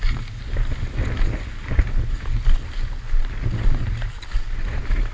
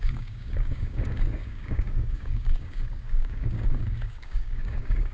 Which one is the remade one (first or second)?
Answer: second